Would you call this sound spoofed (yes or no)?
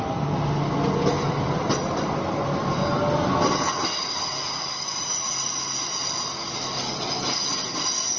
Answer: no